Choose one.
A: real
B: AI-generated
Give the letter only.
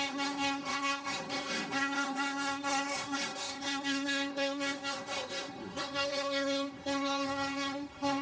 B